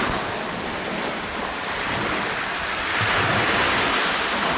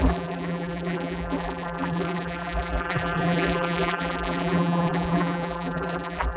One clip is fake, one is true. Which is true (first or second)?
first